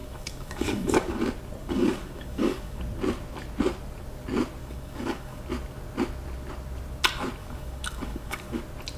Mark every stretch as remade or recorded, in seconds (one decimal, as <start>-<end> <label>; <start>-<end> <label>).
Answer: 0.0-1.2 remade; 1.2-1.6 recorded; 1.6-2.8 remade; 2.8-4.6 recorded; 4.6-5.4 remade; 5.4-7.4 recorded; 7.4-8.6 remade; 8.6-9.0 recorded